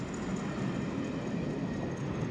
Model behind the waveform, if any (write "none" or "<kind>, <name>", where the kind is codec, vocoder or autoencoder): none